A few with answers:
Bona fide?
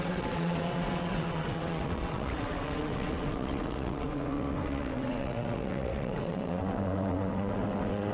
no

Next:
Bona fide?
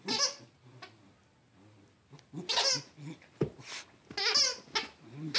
yes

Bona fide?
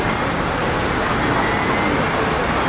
yes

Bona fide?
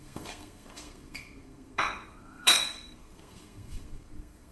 no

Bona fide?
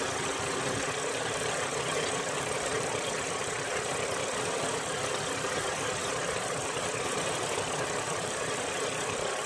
yes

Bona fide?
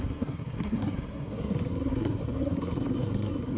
no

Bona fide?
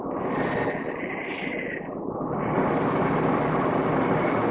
yes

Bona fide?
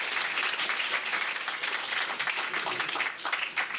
yes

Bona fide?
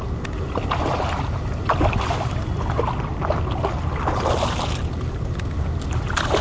yes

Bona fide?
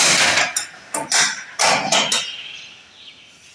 yes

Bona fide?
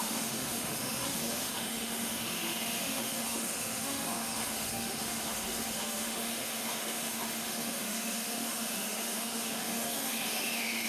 no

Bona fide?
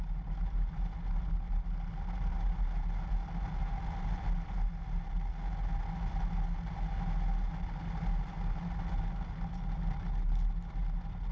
yes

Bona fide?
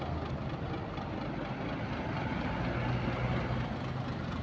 yes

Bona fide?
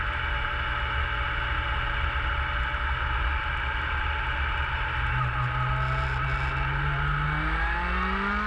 yes